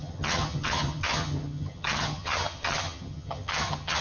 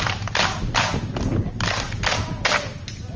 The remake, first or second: first